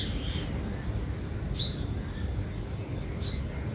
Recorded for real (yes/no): yes